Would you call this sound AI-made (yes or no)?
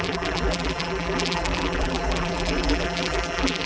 yes